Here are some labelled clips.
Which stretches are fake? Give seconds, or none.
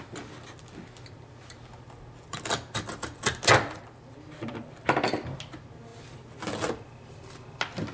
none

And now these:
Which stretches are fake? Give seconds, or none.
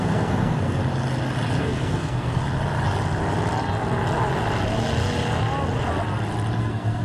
0.0-0.8 (codec, SNAC); 1.6-2.4; 6.6-7.0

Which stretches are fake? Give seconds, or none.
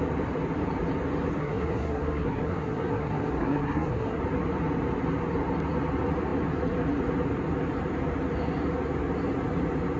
1.4-4.2 (codec, SNAC)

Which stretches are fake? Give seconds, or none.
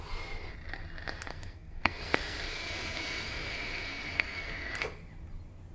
1.3-4.7 (codec, SNAC)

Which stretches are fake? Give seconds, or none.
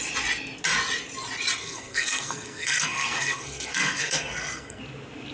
1.6-4.8 (codec, SNAC)